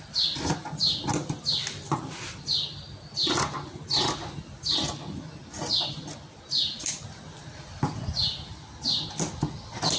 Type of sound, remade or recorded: recorded